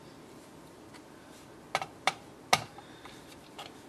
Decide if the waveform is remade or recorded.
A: recorded